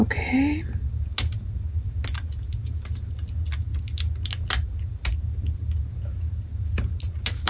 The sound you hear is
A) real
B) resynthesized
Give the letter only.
A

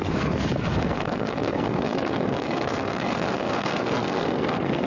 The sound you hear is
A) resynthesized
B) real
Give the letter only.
A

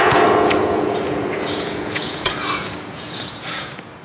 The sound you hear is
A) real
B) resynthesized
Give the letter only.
B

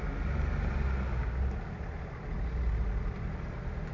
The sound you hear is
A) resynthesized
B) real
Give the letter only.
B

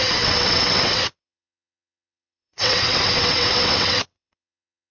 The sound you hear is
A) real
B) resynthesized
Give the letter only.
B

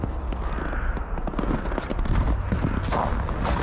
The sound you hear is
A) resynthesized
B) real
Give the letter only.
B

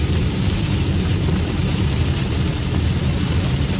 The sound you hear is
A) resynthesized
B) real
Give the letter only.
A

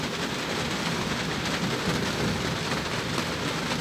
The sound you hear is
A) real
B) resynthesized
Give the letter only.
A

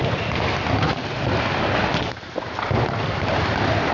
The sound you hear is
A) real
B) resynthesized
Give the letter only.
A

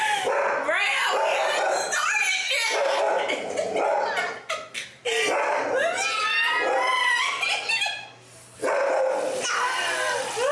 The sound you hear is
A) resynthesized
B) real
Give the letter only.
B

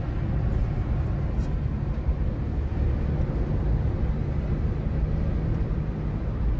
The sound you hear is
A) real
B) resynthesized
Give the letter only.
A